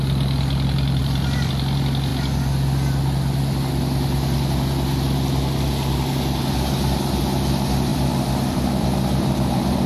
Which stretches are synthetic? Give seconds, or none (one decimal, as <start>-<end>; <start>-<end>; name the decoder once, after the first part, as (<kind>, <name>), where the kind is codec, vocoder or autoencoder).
1.0-1.5 (vocoder, BigVGAN v2); 7.9-9.9